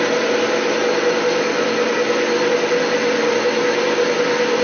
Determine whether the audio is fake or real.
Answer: real